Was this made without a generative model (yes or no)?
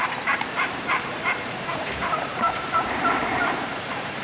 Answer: no